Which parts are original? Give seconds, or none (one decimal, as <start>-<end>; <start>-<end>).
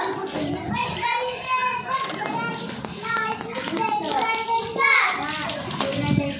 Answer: 0.0-6.4